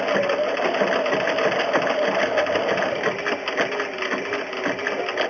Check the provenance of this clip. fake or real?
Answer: real